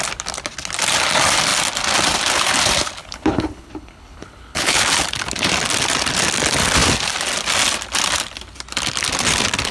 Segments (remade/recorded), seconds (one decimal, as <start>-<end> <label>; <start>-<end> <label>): 0.0-3.0 recorded; 3.0-4.8 remade; 4.8-9.7 recorded

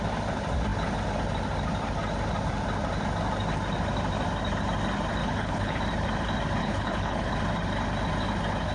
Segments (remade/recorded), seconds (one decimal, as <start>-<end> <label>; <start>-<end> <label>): 0.0-5.2 recorded; 5.2-5.8 remade; 5.8-6.6 recorded; 6.6-7.3 remade; 7.3-8.7 recorded

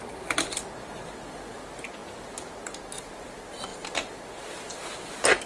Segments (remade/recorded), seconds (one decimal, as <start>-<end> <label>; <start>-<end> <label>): 0.0-5.5 recorded

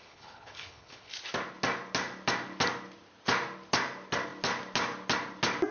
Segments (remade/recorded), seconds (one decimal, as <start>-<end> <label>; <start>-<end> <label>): 0.0-1.1 remade; 1.1-5.7 recorded

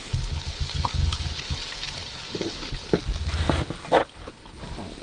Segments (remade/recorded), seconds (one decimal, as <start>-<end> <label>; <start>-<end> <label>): 0.0-3.0 remade; 3.0-4.0 recorded; 4.0-4.6 remade; 4.6-5.0 recorded

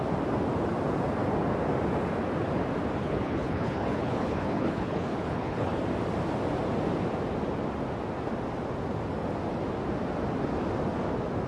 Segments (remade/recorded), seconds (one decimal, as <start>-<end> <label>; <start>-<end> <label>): 0.0-3.0 recorded; 3.0-5.8 remade; 5.8-11.5 recorded